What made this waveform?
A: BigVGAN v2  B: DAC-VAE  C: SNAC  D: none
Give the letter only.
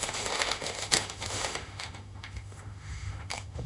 B